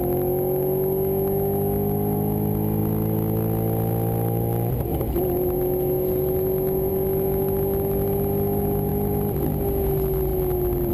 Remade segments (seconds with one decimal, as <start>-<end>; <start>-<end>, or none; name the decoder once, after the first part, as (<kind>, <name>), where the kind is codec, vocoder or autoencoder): none